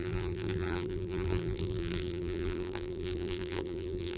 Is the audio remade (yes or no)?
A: yes